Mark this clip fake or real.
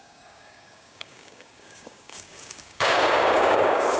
fake